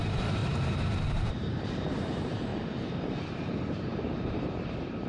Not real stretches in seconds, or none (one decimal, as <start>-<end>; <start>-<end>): 0.0-2.5; 3.5-5.1